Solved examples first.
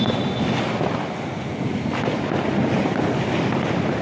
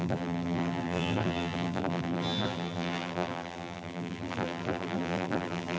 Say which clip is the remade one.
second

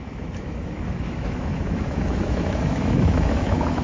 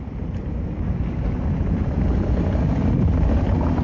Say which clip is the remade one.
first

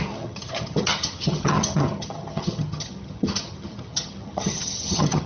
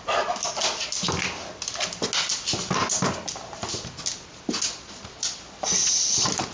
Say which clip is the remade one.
first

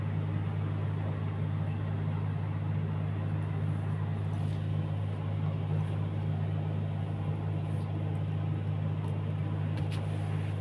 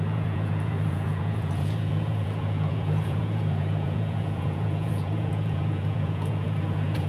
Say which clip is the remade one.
second